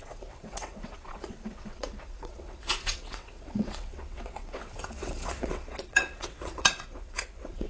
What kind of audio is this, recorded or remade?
remade